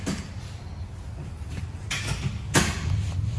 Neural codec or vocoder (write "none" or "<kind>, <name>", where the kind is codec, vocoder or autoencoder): none